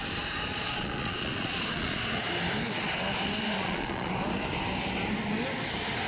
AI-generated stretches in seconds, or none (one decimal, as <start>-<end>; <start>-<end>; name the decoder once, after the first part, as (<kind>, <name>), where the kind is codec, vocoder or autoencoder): 0.5-2.3 (vocoder, Vocos); 3.6-4.1